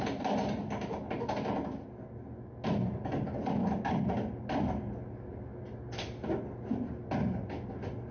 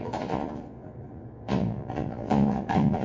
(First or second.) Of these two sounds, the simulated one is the second